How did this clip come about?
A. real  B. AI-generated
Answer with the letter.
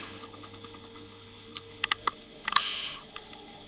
B